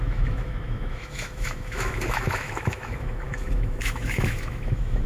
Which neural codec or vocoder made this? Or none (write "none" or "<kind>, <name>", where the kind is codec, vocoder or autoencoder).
autoencoder, DAC-VAE